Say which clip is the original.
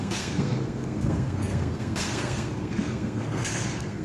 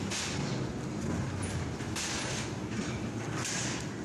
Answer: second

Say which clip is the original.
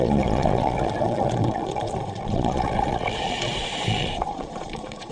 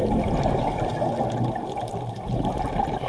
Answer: second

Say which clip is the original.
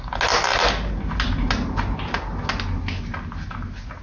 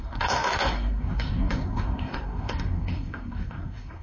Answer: first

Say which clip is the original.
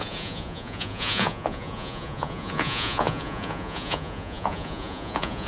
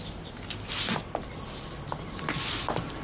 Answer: second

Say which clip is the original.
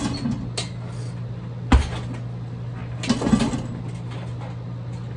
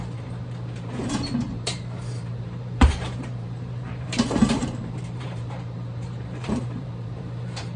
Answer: first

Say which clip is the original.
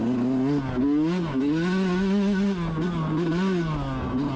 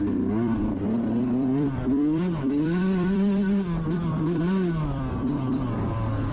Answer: first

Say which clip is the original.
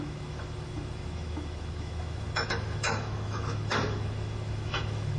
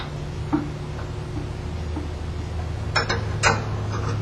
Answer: second